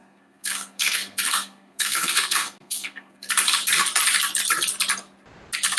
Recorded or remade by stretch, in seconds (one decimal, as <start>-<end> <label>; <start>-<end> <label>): 0.0-3.3 remade; 3.3-5.8 recorded